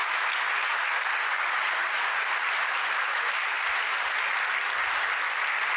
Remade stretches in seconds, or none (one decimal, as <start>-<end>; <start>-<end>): none